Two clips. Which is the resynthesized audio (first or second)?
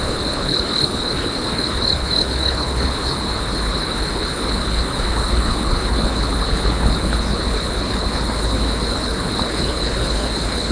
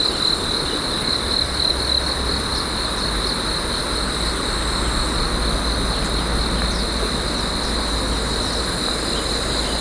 first